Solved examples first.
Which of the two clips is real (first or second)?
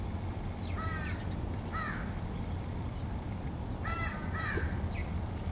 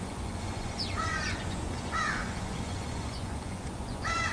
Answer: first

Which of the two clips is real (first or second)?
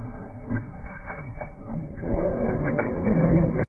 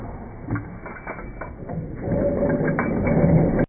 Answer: second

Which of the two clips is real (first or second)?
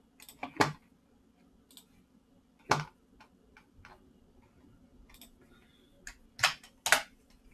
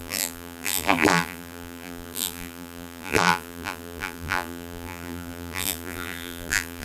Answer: first